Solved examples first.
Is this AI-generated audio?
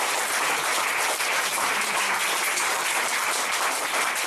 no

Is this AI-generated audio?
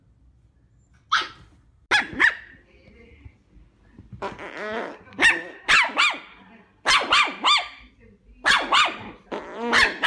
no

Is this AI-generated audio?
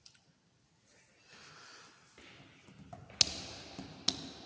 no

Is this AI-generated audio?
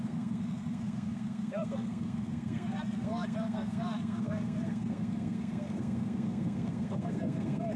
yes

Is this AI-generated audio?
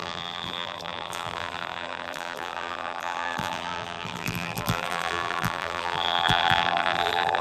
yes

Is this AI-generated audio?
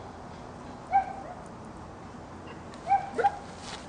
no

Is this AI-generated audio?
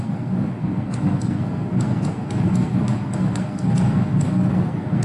yes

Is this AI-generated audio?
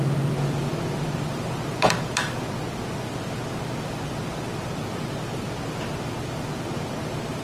no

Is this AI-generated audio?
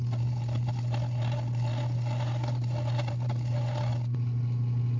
no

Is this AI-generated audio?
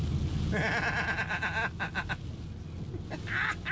no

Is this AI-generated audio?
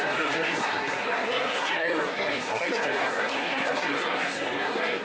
yes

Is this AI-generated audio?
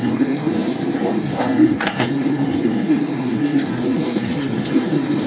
yes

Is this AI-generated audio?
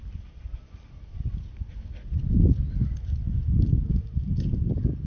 no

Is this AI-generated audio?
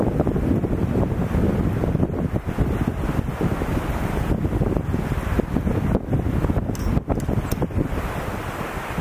no